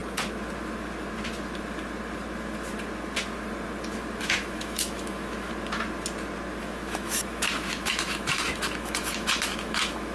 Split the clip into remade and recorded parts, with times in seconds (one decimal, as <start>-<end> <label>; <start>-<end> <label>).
0.0-4.2 recorded; 4.2-5.5 remade; 5.5-6.6 recorded; 6.6-10.1 remade